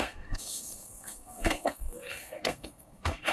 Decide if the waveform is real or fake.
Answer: fake